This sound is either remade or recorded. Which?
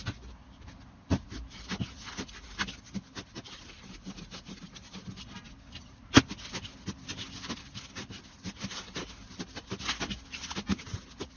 recorded